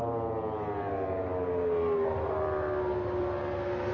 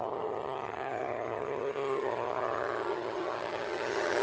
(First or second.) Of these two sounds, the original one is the first